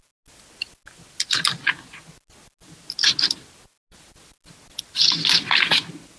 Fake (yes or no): no